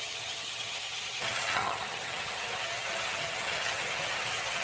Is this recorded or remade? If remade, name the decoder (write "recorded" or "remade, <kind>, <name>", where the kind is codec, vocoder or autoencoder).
remade, vocoder, HiFi-GAN